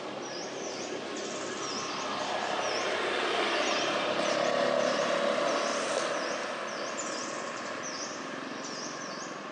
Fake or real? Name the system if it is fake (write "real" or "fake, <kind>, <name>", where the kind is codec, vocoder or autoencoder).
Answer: real